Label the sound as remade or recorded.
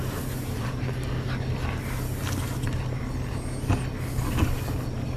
recorded